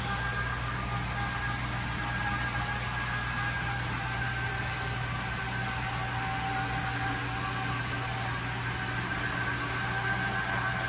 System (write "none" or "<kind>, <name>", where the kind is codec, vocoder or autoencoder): none